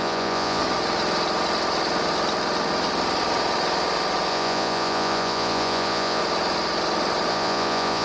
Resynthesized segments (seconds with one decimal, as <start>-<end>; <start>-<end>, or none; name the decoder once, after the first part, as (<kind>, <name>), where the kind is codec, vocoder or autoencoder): 0.0-0.6 (vocoder, Vocos); 4.3-6.2; 7.3-8.0